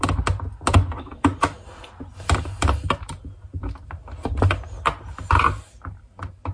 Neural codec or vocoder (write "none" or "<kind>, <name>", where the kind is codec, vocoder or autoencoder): none